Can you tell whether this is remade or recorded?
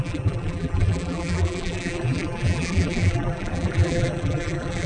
remade